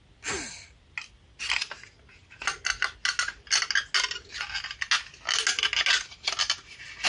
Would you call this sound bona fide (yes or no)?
yes